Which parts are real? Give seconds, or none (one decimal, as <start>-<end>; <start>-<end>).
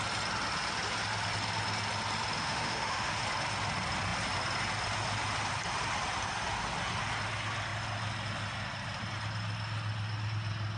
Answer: 0.0-2.4; 3.2-10.8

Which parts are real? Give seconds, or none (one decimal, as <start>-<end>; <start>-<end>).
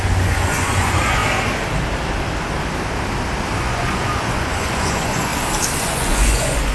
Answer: 1.2-3.6; 5.3-5.8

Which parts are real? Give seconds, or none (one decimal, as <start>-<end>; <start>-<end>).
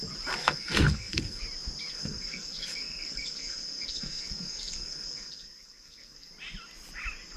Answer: 0.0-0.4; 1.4-1.9; 6.3-7.4